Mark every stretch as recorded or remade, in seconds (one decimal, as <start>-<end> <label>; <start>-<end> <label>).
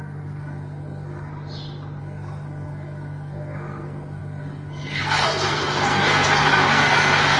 0.0-1.3 remade; 1.3-2.0 recorded; 2.0-7.4 remade